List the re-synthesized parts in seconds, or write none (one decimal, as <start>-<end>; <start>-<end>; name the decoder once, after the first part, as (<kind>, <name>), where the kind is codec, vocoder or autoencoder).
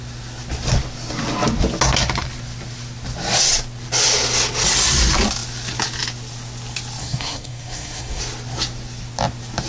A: 7.0-8.2 (codec, SNAC)